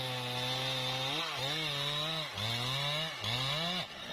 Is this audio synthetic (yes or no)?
no